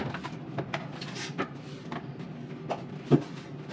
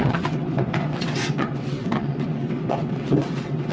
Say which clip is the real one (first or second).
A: first